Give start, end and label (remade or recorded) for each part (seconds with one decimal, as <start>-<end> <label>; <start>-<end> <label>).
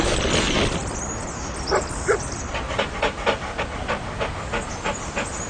0.0-5.5 recorded